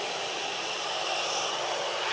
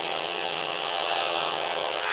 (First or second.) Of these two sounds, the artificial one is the second